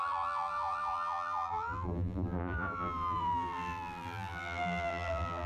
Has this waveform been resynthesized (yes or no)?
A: yes